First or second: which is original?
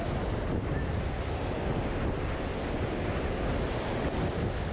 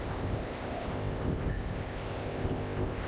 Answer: first